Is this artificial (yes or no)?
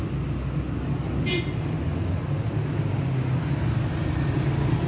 no